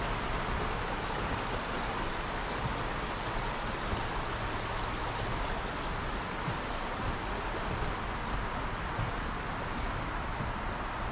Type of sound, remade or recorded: recorded